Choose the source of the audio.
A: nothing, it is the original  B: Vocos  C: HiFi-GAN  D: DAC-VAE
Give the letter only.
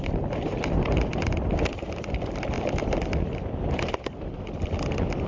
A